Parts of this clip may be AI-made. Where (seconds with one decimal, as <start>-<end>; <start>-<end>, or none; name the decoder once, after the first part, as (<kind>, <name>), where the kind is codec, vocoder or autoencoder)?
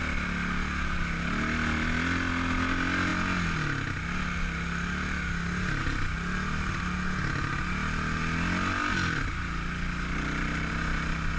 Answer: none